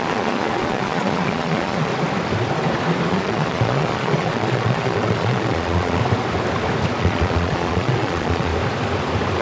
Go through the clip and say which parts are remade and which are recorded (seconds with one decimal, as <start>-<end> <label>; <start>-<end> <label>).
0.0-1.9 remade; 1.9-3.1 recorded; 3.1-6.0 remade; 6.0-7.0 recorded; 7.0-8.5 remade; 8.5-9.4 recorded